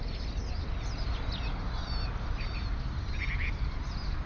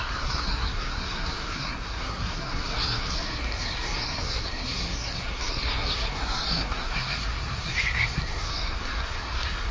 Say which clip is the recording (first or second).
first